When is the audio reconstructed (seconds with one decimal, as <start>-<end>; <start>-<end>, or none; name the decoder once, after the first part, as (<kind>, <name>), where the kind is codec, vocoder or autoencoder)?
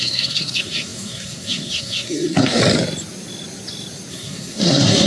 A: 0.0-2.6 (codec, SNAC); 4.1-5.1